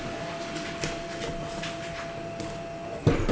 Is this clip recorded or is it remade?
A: recorded